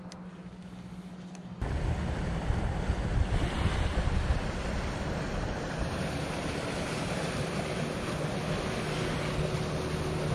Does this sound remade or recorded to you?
recorded